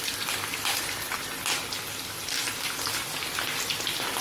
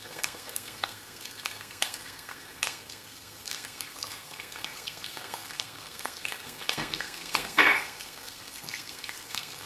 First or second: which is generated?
second